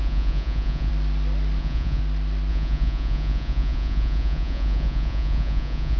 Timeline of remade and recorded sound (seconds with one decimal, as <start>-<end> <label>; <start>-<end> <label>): 0.0-0.9 remade; 0.9-1.6 recorded; 1.6-2.0 remade; 2.0-2.5 recorded; 2.5-6.0 remade